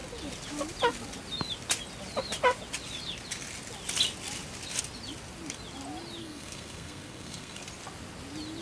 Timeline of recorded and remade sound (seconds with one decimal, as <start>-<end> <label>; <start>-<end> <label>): 0.0-6.2 recorded; 6.2-7.6 remade; 7.6-8.6 recorded